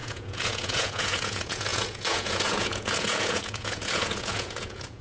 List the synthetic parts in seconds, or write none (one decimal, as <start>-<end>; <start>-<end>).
0.0-5.0